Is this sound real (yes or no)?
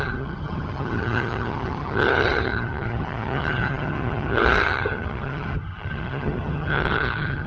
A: no